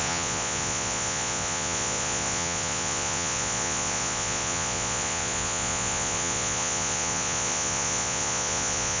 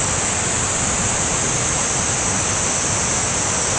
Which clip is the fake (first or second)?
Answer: first